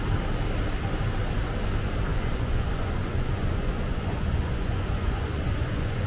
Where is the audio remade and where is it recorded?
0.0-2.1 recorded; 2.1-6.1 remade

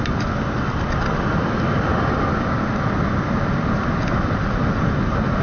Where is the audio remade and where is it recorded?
0.0-5.4 recorded

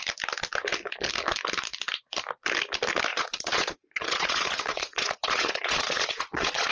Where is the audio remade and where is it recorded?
0.0-3.1 recorded; 3.1-6.7 remade

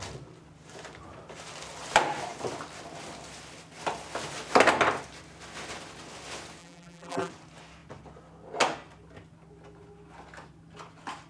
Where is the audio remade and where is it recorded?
0.0-6.6 recorded; 6.6-7.3 remade; 7.3-11.3 recorded

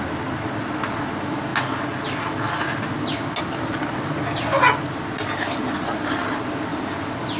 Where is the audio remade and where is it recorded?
0.0-7.4 recorded

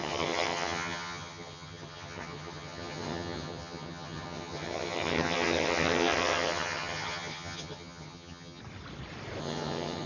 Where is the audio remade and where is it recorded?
0.0-8.6 remade; 8.6-9.4 recorded; 9.4-10.1 remade

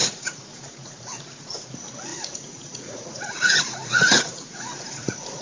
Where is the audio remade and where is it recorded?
0.0-1.7 remade; 1.7-2.1 recorded; 2.1-5.4 remade

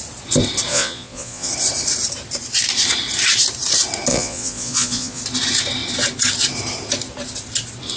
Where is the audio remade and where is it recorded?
0.0-0.7 recorded; 0.7-1.5 remade; 1.5-4.1 recorded; 4.1-5.2 remade; 5.2-8.0 recorded